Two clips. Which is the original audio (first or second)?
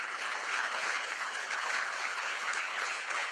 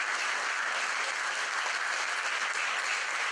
second